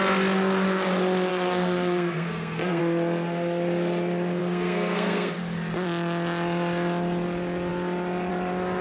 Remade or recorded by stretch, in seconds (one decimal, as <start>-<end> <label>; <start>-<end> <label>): 0.0-1.3 recorded; 1.3-2.8 remade; 2.8-4.4 recorded; 4.4-5.3 remade; 5.3-8.8 recorded